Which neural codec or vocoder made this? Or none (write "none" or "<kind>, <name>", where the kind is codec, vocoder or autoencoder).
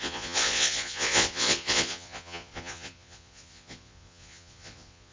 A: vocoder, Vocos